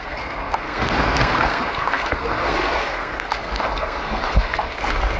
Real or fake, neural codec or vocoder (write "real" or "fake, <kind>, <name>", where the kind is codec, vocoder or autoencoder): fake, codec, SNAC